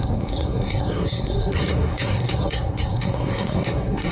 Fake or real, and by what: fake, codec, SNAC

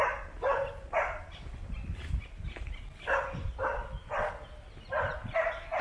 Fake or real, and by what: real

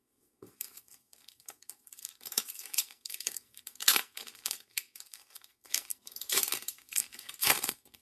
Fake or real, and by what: fake, codec, SNAC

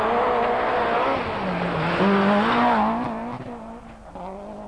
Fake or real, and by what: real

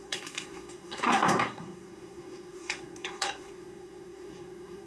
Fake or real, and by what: fake, codec, SNAC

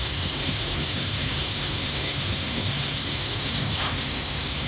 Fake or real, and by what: fake, codec, SNAC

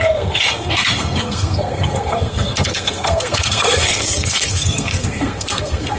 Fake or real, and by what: fake, codec, SNAC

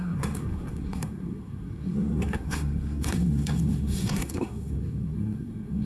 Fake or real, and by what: fake, codec, SNAC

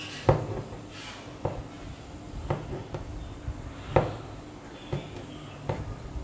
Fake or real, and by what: real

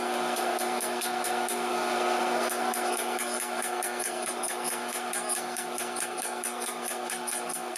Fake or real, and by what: fake, codec, SNAC